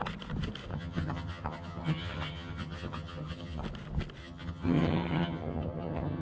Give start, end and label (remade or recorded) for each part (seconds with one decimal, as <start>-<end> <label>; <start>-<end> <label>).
0.0-0.7 recorded; 0.7-3.6 remade; 3.6-4.2 recorded; 4.2-6.2 remade